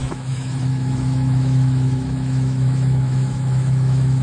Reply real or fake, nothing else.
fake